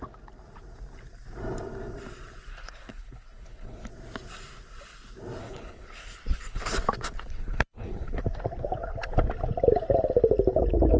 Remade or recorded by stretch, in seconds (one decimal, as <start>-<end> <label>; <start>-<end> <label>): 0.0-2.5 recorded; 2.5-3.9 remade; 3.9-5.4 recorded; 5.4-6.7 remade; 6.7-7.3 recorded; 7.3-8.2 remade; 8.2-11.0 recorded